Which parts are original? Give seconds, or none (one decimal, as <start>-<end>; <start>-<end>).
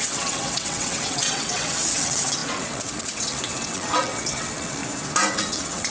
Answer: 4.8-5.3